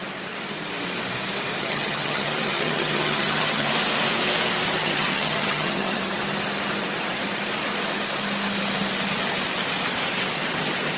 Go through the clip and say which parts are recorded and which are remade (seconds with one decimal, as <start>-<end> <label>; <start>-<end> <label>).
0.0-1.6 recorded; 1.6-3.7 remade; 3.7-4.8 recorded; 4.8-6.2 remade; 6.2-11.0 recorded